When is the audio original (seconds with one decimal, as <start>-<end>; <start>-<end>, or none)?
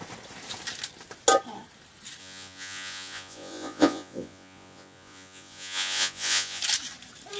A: 0.0-2.2; 6.6-7.4